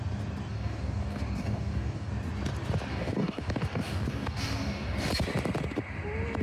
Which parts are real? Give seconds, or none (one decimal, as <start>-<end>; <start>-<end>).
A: 0.0-0.5; 2.1-2.9; 5.1-6.4